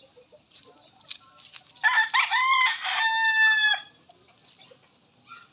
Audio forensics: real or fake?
real